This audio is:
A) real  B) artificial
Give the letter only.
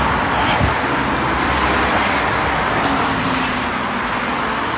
A